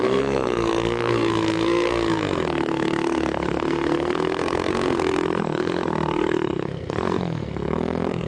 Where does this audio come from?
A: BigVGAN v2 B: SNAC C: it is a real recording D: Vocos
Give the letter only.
B